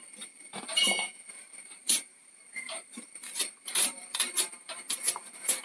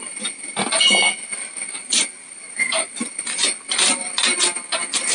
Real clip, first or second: second